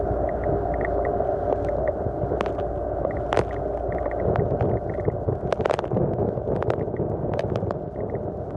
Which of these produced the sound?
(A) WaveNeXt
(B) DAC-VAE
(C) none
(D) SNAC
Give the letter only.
C